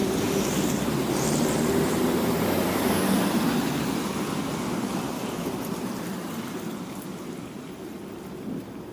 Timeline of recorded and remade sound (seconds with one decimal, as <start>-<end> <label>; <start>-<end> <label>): 0.0-2.5 remade; 2.5-8.9 recorded